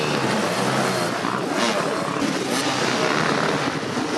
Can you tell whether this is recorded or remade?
recorded